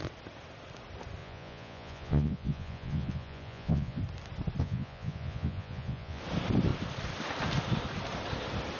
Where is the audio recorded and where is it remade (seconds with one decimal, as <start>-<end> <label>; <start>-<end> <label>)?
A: 0.0-1.2 recorded; 1.2-4.0 remade; 4.0-4.6 recorded; 4.6-6.2 remade; 6.2-8.8 recorded